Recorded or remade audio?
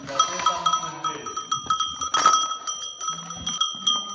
recorded